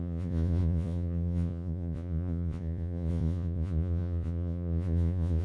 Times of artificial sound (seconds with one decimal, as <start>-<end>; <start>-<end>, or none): 0.0-5.4